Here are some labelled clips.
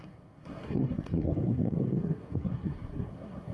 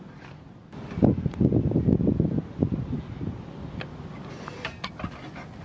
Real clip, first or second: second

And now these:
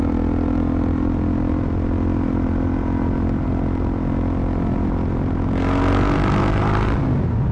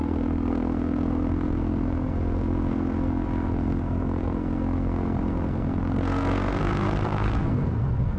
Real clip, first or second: first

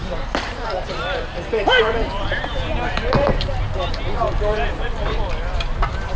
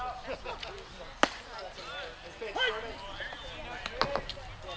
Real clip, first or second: second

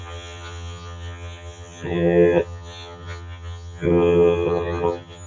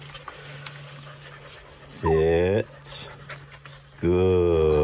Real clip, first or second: second